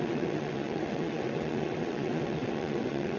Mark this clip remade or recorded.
remade